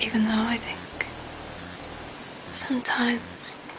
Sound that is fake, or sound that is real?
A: real